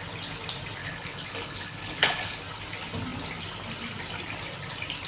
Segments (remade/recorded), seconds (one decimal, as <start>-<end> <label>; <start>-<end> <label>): 0.0-0.8 recorded; 0.8-2.4 remade; 2.4-5.1 recorded